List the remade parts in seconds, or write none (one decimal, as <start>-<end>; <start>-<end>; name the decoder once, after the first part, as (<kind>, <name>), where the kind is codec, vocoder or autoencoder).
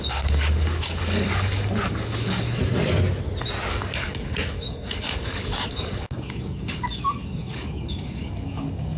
0.0-2.6 (codec, DAC); 3.7-9.0